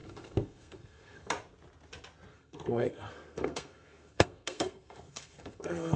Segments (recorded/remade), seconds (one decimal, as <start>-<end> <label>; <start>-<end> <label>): 0.0-1.3 remade; 1.3-2.3 recorded; 2.3-6.0 remade